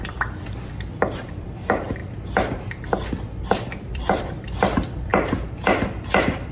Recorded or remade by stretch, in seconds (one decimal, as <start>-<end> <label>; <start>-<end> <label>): 0.0-2.0 remade; 2.0-3.5 recorded; 3.5-5.1 remade; 5.1-5.8 recorded; 5.8-6.5 remade